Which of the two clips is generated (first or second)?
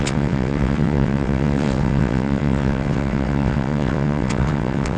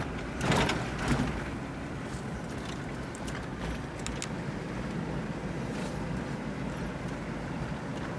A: first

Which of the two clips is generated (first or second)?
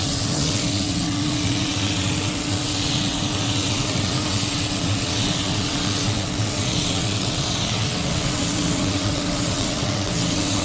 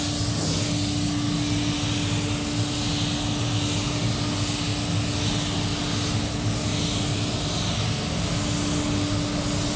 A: first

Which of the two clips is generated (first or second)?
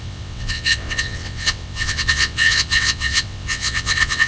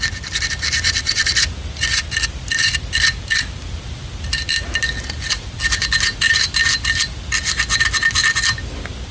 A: first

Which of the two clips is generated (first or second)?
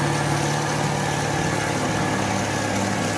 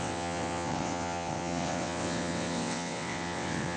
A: second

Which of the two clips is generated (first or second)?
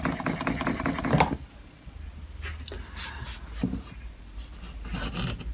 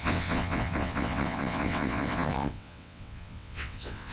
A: second